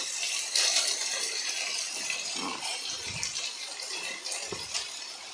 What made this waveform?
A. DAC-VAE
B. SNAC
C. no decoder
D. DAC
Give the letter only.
C